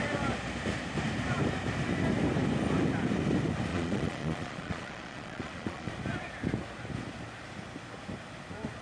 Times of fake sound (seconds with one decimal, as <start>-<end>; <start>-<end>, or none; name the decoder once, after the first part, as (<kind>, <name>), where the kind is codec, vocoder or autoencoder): 3.7-5.9 (vocoder, Vocos)